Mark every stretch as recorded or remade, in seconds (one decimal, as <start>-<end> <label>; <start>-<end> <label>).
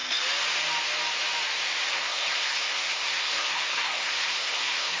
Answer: 0.0-1.9 recorded; 1.9-5.0 remade